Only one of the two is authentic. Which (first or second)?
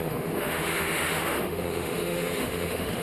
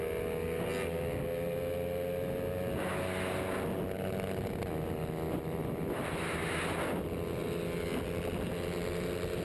second